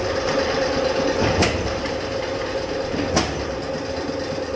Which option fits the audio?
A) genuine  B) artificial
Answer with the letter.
A